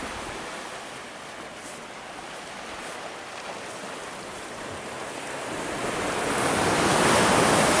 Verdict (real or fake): real